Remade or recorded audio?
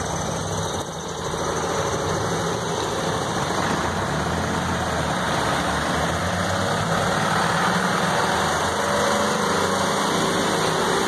recorded